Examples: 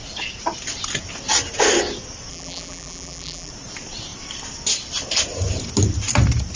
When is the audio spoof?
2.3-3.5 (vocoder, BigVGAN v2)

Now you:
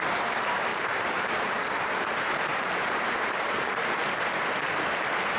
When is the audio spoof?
0.7-1.9 (vocoder, BigVGAN v2); 2.5-4.2

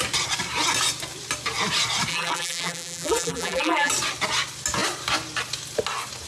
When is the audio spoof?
2.1-3.9 (vocoder, BigVGAN v2)

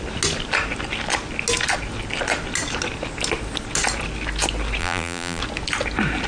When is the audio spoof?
4.8-5.4 (vocoder, BigVGAN v2)

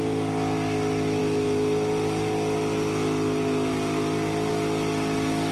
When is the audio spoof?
none

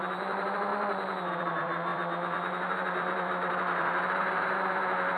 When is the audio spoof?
0.0-0.7 (vocoder, BigVGAN v2); 1.3-5.2

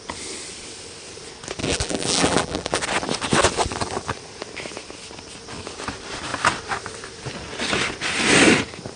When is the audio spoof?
1.6-2.8 (vocoder, BigVGAN v2)

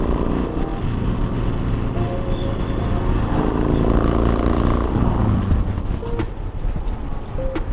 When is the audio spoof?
none